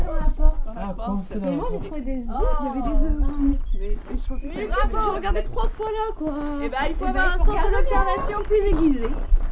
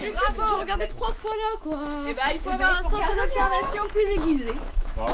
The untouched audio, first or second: first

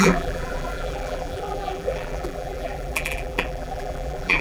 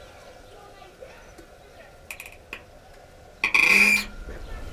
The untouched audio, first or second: second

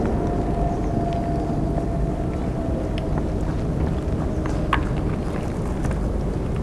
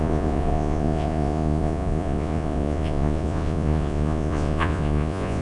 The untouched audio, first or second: first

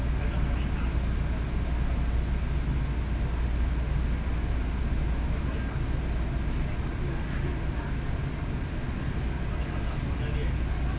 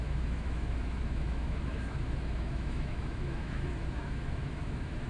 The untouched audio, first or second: first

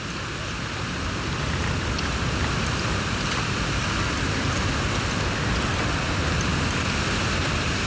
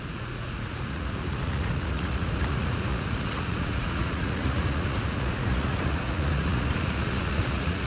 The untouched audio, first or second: first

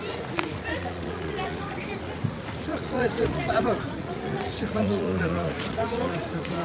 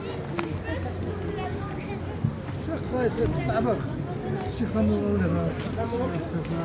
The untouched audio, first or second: second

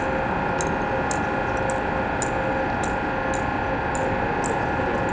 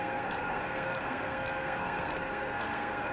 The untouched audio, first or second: first